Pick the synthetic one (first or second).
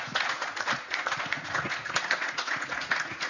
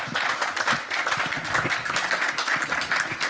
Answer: first